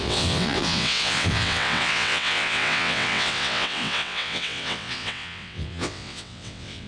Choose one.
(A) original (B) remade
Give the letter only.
B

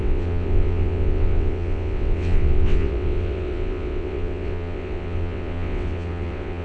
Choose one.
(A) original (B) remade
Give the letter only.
B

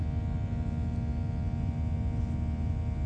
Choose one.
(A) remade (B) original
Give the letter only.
B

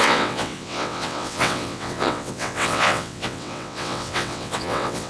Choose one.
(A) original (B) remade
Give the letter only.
B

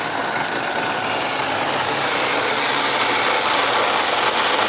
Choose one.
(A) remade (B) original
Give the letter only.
B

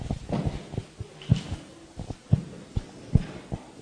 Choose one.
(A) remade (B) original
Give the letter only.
B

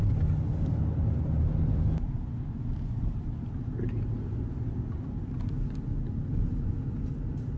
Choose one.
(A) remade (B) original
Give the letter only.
B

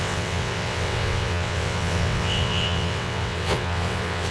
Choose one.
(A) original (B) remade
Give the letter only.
B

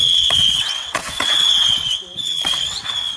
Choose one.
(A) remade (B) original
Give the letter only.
A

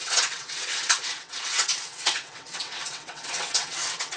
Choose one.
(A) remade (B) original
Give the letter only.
A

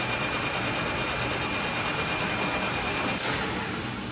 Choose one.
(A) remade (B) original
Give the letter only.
B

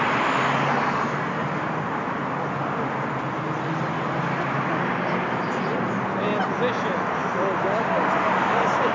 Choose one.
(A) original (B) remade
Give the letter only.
A